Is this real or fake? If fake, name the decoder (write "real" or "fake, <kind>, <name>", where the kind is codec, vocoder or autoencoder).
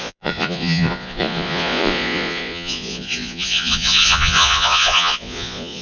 fake, vocoder, Vocos